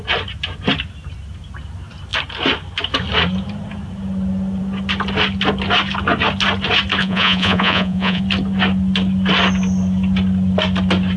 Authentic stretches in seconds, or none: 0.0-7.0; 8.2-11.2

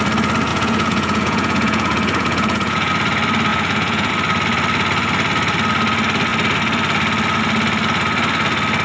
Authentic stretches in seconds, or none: 0.0-0.5; 2.9-3.5; 4.1-8.8

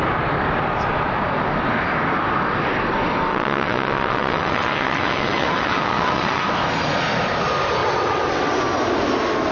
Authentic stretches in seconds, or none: 0.0-3.3; 6.4-7.8; 8.6-9.5